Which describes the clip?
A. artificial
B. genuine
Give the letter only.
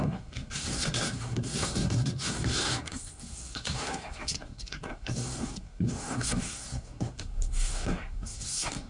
A